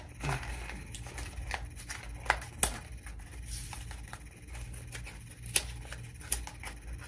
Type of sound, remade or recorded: recorded